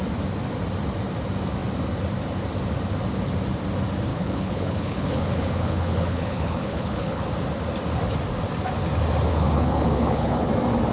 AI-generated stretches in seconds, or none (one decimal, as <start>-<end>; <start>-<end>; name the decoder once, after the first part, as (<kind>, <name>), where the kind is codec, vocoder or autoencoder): 4.1-7.2 (codec, HILCodec); 9.3-10.5